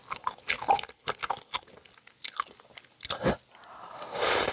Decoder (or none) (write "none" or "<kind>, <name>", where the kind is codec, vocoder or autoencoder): none